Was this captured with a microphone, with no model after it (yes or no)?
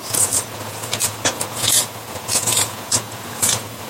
no